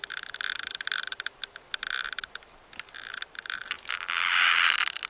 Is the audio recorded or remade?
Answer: recorded